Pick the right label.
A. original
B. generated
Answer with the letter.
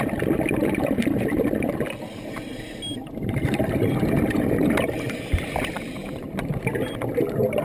B